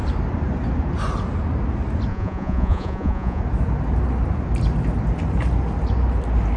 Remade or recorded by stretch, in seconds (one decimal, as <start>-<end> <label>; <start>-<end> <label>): 0.0-2.1 recorded; 2.1-3.4 remade; 3.4-6.6 recorded